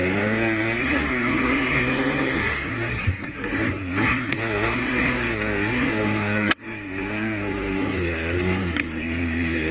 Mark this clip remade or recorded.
remade